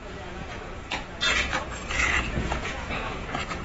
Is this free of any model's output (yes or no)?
no